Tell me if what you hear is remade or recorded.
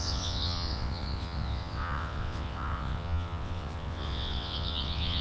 remade